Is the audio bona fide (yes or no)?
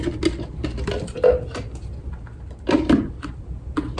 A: yes